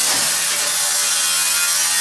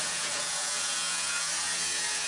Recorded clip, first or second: first